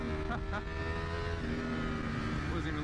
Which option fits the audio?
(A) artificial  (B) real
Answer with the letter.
B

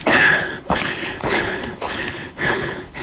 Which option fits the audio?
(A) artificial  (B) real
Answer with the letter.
A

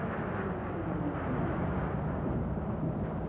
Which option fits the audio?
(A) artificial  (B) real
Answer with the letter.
B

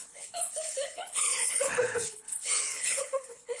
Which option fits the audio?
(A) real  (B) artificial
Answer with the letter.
B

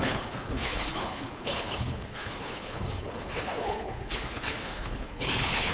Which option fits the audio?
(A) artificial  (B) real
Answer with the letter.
A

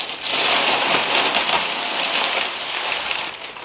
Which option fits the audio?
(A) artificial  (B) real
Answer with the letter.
B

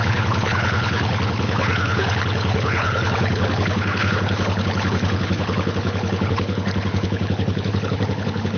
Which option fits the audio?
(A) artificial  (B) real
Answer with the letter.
A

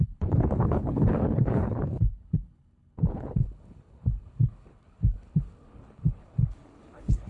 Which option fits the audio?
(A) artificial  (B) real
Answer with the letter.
A